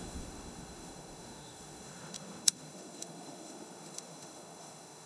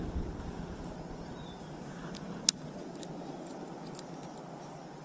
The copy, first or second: first